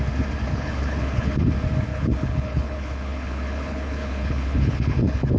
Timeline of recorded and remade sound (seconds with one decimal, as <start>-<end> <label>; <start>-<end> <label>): 0.0-0.5 recorded; 0.5-1.5 remade; 1.5-1.9 recorded; 1.9-5.4 remade